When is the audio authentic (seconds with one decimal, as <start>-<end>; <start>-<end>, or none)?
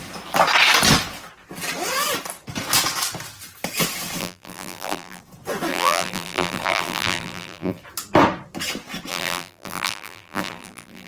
0.0-4.2; 5.2-5.7; 7.8-9.1